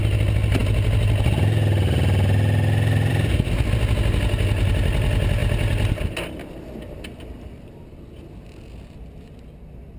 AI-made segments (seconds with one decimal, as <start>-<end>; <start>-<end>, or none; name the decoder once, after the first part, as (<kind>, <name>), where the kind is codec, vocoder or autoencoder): none